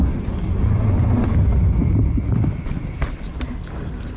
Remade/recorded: recorded